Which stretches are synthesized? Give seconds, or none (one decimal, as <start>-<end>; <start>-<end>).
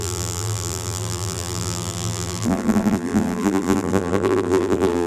0.0-5.1